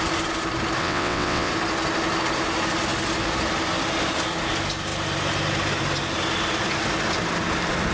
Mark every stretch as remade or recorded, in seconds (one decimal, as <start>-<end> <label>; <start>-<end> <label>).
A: 0.0-0.8 recorded; 0.8-1.5 remade; 1.5-7.9 recorded